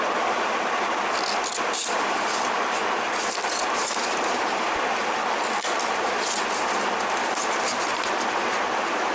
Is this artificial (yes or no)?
no